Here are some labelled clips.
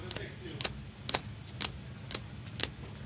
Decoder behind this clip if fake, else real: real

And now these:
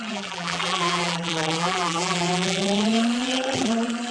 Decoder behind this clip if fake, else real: fake, vocoder, BigVGAN v2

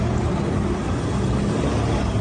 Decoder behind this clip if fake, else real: real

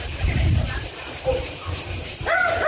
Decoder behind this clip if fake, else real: fake, vocoder, BigVGAN v2